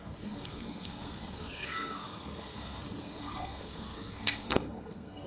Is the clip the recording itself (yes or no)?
no